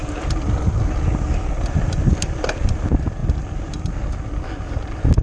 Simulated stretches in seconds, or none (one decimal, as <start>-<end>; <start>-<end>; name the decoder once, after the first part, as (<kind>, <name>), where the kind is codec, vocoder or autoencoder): none